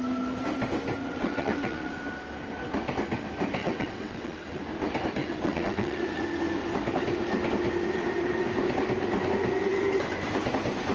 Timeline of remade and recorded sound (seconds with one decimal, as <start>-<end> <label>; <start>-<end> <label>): 0.0-1.0 recorded; 1.0-1.9 remade; 1.9-3.6 recorded; 3.6-4.6 remade; 4.6-5.2 recorded; 5.2-6.2 remade; 6.2-10.9 recorded